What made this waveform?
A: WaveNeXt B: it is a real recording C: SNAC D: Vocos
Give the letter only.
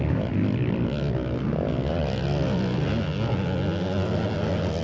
B